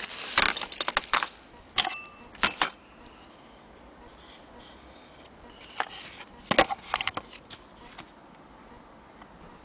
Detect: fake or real real